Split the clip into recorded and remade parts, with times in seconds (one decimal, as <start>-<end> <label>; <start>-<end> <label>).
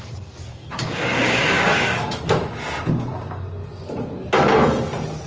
0.0-0.5 recorded; 0.5-2.2 remade; 2.2-5.3 recorded